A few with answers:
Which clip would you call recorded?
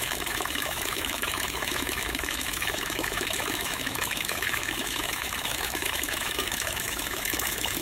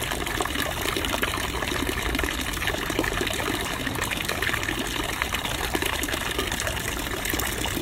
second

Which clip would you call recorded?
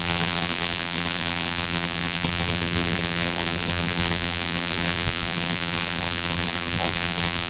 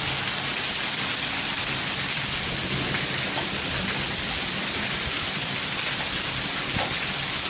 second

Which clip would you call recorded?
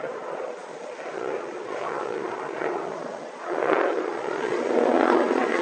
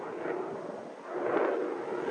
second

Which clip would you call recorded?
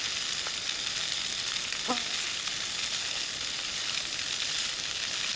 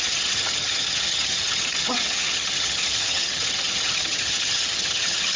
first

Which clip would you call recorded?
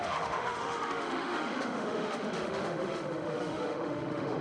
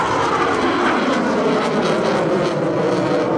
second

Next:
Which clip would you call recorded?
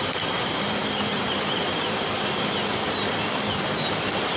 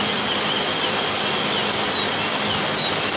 second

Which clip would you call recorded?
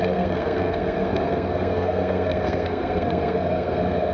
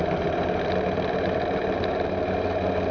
second